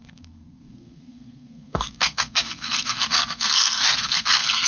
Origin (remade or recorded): remade